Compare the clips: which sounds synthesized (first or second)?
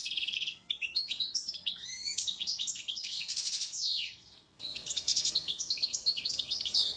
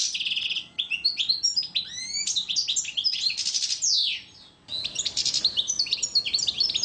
first